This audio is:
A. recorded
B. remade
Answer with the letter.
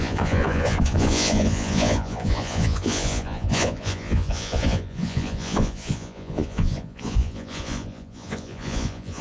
B